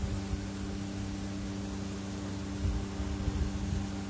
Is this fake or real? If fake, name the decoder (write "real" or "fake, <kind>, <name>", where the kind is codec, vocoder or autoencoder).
real